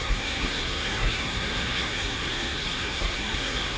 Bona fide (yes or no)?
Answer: no